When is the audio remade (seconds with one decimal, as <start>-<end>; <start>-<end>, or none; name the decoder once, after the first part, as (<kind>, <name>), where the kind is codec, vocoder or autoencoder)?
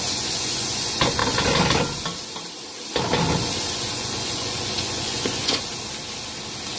0.0-1.2 (vocoder, Vocos); 3.7-5.7